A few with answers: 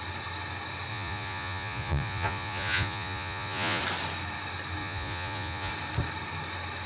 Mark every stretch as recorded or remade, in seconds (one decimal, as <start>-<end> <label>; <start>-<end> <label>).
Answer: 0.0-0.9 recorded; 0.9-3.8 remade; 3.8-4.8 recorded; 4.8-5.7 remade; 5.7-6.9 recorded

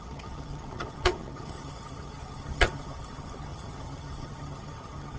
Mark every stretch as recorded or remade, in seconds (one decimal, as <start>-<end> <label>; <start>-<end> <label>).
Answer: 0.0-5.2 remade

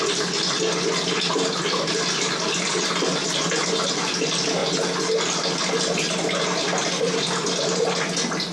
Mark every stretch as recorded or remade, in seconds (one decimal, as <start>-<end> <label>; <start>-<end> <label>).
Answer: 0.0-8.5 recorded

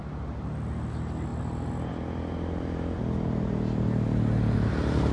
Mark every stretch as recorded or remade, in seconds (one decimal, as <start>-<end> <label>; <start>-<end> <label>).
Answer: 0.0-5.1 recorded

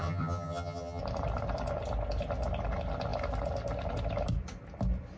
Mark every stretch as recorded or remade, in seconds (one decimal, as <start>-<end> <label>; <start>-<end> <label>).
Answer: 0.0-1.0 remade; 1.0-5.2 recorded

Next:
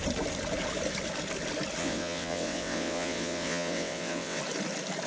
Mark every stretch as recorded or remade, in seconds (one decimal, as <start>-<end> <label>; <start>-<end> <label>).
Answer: 0.0-1.8 recorded; 1.8-4.4 remade; 4.4-5.1 recorded

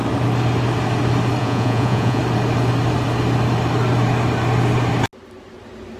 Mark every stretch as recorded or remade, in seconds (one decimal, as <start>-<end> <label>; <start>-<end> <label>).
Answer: 0.0-1.4 recorded; 1.4-2.2 remade; 2.2-6.0 recorded